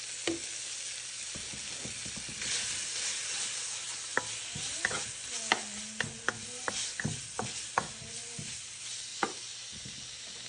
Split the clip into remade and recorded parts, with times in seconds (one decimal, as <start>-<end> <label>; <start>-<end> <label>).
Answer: 0.0-10.5 recorded